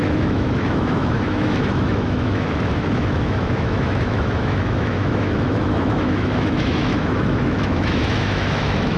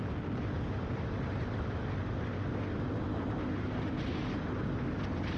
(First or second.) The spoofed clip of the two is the first